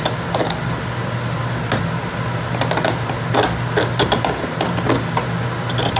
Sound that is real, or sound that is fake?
real